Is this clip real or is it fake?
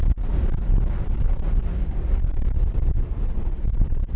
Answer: real